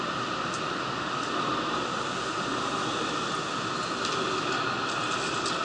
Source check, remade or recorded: recorded